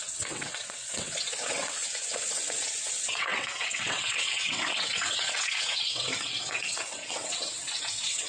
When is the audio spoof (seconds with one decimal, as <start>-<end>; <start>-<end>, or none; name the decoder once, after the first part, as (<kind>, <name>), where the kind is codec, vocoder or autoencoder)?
0.0-8.3 (vocoder, WaveNeXt)